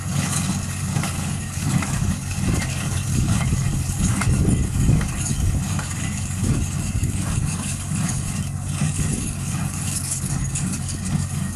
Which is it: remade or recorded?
remade